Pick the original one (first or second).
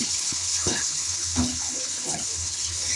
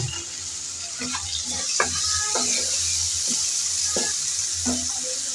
second